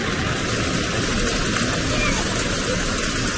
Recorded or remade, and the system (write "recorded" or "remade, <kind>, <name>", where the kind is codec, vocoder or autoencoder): recorded